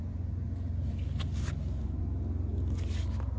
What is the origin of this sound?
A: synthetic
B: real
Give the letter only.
B